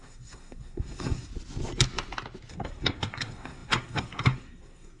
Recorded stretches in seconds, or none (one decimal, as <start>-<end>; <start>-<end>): 1.3-2.5